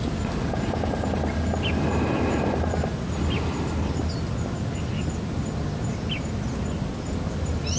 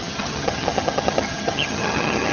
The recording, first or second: first